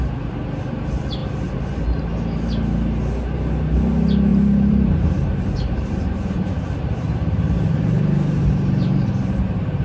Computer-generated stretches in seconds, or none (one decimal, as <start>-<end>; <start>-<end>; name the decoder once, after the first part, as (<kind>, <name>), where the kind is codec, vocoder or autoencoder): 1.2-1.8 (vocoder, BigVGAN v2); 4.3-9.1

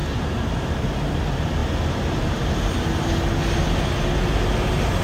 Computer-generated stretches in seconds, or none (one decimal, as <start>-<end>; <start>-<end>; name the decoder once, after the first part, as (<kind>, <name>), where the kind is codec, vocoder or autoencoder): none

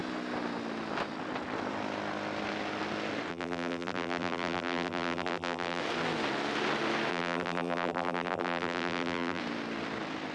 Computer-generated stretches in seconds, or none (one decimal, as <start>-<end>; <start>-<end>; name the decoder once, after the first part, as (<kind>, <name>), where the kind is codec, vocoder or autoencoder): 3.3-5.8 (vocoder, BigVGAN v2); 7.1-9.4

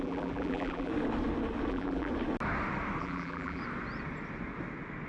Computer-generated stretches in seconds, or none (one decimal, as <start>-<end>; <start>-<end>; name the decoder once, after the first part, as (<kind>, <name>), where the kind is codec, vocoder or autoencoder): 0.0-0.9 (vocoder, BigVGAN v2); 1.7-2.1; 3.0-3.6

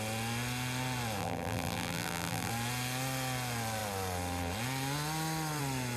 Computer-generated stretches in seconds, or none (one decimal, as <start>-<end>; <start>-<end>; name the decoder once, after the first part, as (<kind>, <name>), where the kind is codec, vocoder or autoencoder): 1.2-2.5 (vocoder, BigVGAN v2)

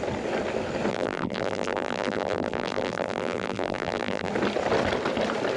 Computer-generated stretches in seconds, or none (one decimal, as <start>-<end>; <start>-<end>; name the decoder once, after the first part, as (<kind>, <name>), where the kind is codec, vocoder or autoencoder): 0.9-4.3 (vocoder, BigVGAN v2)